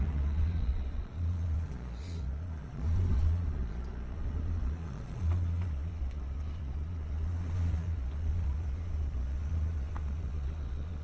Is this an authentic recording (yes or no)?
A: no